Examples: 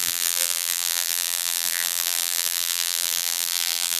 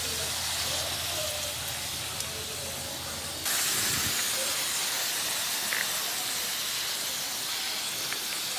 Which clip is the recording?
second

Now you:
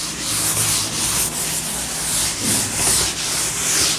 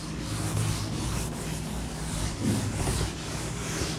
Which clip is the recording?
first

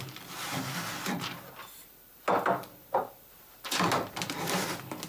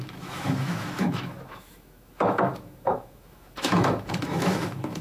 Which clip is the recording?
first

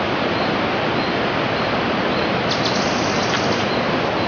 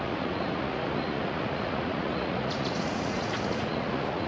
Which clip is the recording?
first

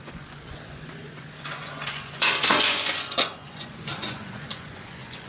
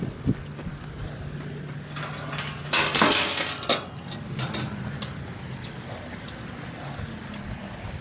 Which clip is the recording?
second